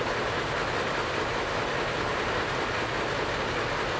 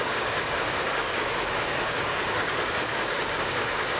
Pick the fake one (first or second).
second